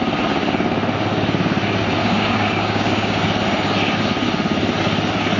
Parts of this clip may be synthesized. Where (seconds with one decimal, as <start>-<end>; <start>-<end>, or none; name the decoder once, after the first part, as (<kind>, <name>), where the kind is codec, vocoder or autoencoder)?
2.0-3.2 (codec, DAC)